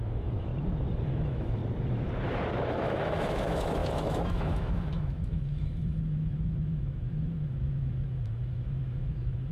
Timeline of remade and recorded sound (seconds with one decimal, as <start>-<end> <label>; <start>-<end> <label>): 0.0-0.5 remade; 0.5-1.0 recorded; 1.0-1.6 remade; 1.6-2.7 recorded; 2.7-9.5 remade